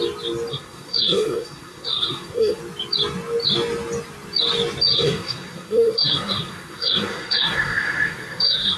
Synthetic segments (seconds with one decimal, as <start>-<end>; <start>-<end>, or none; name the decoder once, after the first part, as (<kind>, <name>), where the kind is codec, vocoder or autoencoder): 0.5-2.6 (codec, SNAC); 4.9-8.8